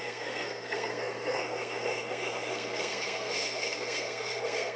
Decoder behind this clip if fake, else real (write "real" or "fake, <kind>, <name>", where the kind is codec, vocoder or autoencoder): fake, codec, SNAC